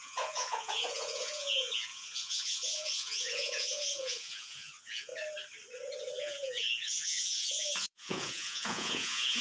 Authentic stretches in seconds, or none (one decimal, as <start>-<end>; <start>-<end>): 5.1-6.2